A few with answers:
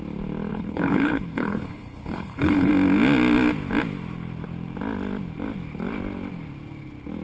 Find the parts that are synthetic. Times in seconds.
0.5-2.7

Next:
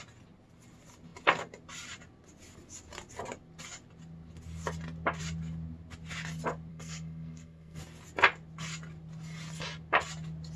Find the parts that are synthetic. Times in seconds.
6.7-7.8

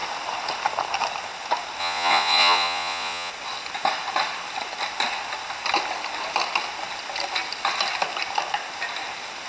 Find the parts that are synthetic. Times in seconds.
1.8-3.3